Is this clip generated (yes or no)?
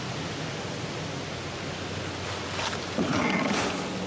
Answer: no